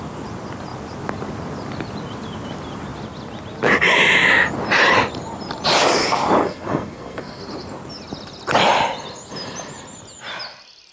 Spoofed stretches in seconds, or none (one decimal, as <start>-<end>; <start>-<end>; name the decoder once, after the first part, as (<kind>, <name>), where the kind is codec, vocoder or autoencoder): 6.4-7.4 (codec, SNAC)